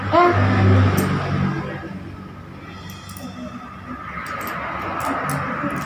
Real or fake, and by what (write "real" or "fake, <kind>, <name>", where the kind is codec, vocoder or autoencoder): real